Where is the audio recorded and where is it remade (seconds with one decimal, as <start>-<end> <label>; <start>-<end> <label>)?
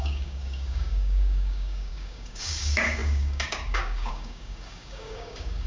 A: 0.0-5.7 remade